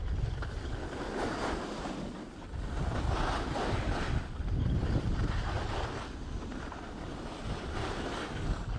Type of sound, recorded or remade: recorded